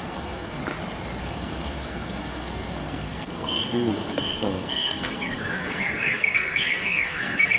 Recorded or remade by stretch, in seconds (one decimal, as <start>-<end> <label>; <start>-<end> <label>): 0.0-0.6 remade; 0.6-1.2 recorded; 1.2-7.6 remade